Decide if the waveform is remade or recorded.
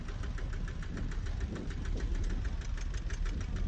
recorded